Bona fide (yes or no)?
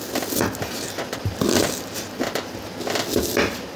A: yes